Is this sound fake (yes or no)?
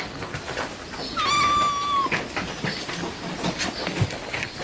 no